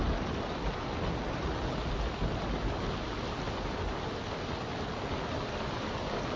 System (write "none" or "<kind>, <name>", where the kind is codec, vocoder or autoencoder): none